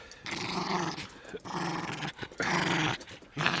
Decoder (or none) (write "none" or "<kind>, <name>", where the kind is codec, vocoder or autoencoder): none